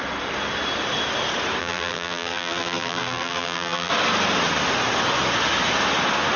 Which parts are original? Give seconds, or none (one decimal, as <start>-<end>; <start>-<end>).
0.0-1.6; 3.9-6.4